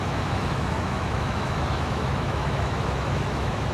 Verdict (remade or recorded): remade